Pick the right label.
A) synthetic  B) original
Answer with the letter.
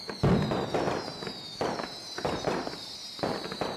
B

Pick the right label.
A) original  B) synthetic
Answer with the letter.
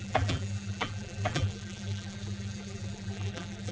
B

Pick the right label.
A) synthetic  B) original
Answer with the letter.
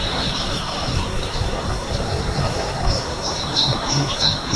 A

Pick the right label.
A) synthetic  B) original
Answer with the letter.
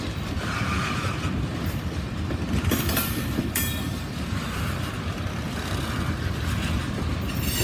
A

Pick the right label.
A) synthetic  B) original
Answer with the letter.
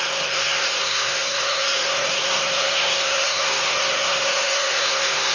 A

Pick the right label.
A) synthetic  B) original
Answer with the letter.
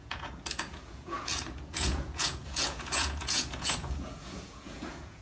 A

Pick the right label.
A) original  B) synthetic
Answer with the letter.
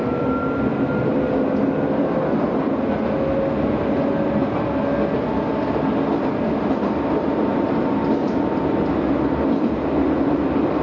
A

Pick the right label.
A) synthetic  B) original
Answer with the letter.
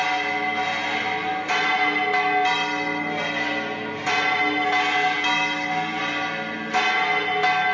B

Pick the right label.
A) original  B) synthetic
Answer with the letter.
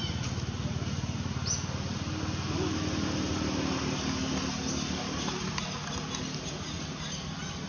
A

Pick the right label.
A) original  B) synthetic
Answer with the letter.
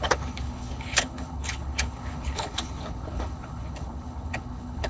B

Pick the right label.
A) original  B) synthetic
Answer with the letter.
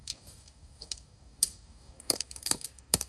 B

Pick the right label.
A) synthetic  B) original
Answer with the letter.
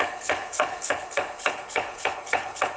A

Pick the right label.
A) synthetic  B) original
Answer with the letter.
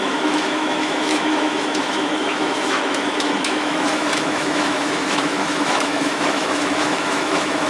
A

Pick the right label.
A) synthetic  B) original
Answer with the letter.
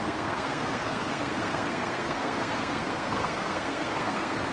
A